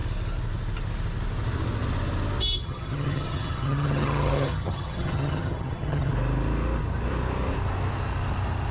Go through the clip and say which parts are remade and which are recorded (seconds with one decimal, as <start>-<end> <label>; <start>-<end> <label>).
0.0-2.6 recorded; 2.6-6.1 remade; 6.1-8.7 recorded